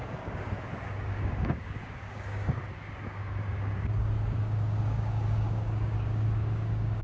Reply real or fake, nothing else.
fake